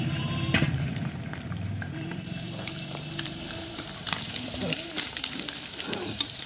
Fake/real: fake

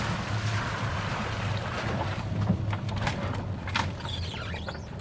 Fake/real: fake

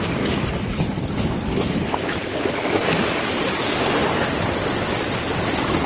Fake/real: real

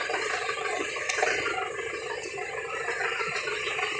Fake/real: fake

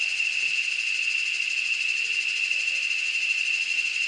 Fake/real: real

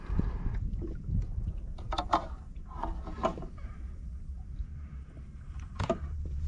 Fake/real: fake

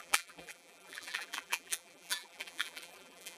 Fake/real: fake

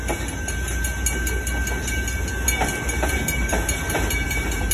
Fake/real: real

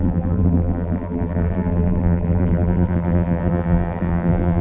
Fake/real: fake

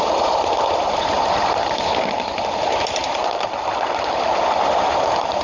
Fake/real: real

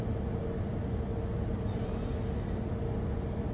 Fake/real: real